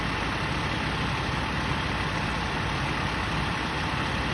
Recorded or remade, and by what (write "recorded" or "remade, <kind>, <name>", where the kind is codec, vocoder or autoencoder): recorded